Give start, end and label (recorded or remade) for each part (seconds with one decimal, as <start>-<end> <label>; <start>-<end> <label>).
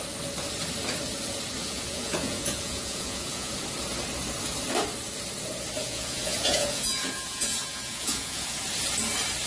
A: 0.0-1.6 recorded; 1.6-3.5 remade; 3.5-5.8 recorded; 5.8-8.6 remade; 8.6-9.5 recorded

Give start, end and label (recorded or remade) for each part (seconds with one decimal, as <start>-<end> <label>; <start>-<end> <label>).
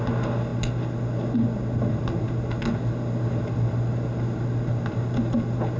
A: 0.0-5.8 recorded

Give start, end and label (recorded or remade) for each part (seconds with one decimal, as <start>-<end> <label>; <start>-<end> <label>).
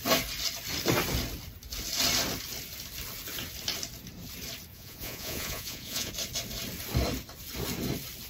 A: 0.0-4.7 recorded; 4.7-6.1 remade; 6.1-8.3 recorded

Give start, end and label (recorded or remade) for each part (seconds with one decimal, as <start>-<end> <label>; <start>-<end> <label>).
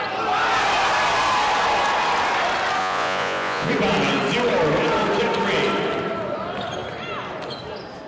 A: 0.0-2.8 recorded; 2.8-3.7 remade; 3.7-8.1 recorded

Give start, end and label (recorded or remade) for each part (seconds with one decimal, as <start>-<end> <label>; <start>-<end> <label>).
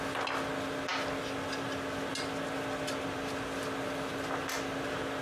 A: 0.0-5.2 recorded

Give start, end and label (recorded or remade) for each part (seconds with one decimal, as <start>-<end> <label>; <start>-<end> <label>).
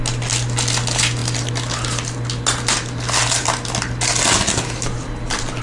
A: 0.0-5.6 recorded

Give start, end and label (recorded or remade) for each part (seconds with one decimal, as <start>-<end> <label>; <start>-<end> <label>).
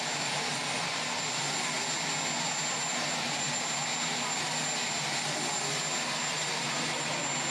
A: 0.0-7.5 recorded